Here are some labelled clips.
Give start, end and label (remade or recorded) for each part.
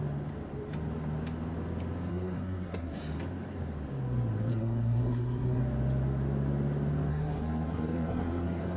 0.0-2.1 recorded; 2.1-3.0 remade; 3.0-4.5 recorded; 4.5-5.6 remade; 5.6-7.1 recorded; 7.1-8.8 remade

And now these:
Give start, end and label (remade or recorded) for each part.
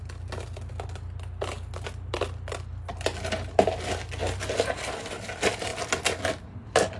0.0-7.0 recorded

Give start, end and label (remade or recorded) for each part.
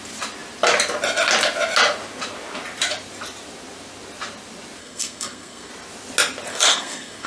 0.0-4.8 recorded; 4.8-5.7 remade; 5.7-6.5 recorded; 6.5-7.3 remade